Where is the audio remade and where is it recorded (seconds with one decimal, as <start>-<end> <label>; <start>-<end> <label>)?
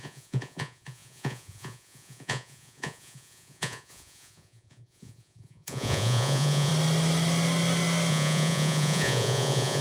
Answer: 0.0-6.7 remade; 6.7-8.1 recorded; 8.1-9.8 remade